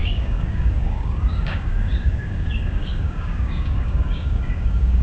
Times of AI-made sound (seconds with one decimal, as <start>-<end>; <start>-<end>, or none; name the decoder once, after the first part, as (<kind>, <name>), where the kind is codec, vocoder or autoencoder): 0.0-5.0 (codec, DAC)

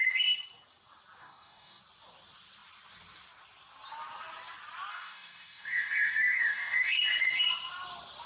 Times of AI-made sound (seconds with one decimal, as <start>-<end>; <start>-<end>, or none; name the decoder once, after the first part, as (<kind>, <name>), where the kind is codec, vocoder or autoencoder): 1.2-1.8 (codec, DAC); 4.9-7.0

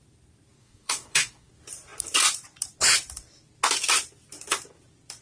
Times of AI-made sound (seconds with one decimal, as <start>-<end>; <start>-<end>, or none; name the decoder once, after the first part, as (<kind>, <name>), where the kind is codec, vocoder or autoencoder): 0.6-1.5 (codec, DAC)

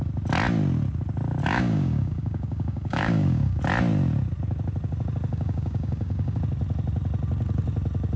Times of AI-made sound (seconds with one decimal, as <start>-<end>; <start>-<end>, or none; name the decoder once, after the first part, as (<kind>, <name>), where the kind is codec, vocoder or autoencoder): 1.4-3.6 (codec, DAC); 5.3-6.4

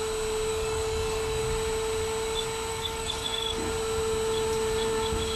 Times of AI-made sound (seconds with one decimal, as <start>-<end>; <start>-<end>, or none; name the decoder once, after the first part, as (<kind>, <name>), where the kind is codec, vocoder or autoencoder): 0.5-1.4 (codec, DAC); 2.7-3.7

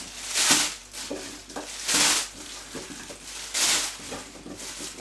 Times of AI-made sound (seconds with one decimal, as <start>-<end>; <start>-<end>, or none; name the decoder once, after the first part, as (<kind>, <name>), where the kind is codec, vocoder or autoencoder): none

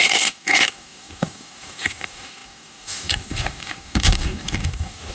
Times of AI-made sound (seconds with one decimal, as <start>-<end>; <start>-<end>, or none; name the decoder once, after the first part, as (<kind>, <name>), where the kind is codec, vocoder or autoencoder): 0.0-5.1 (codec, DAC)